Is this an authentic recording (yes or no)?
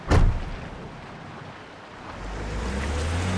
yes